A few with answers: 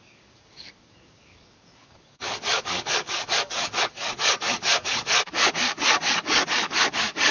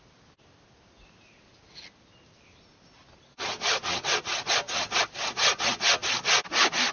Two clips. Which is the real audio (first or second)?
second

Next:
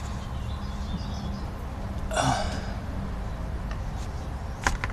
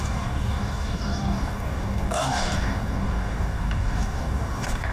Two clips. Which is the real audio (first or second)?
first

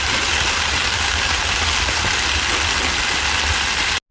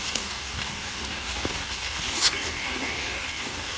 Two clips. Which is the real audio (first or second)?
first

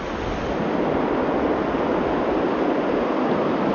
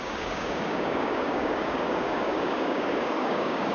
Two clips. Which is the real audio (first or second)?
first